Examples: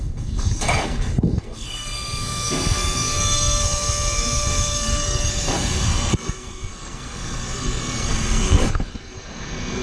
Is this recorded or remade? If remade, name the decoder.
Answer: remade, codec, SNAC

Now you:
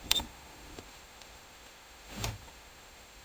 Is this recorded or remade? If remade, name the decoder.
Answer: remade, autoencoder, DAC-VAE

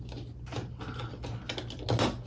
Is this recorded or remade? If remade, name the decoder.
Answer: recorded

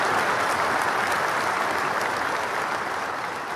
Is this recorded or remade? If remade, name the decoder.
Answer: recorded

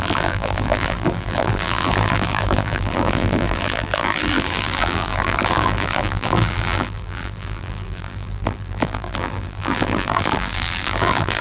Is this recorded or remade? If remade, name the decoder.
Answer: remade, vocoder, BigVGAN v2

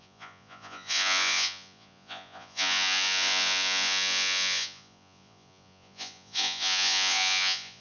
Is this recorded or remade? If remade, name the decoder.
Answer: remade, vocoder, Vocos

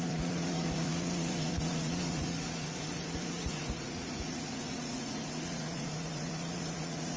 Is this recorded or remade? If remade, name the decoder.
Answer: remade, vocoder, Vocos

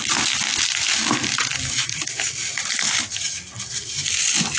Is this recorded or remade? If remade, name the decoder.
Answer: recorded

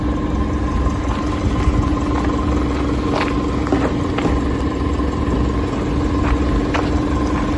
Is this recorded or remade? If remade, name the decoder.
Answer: recorded